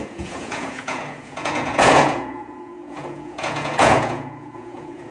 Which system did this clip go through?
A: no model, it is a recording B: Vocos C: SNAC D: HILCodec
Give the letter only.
B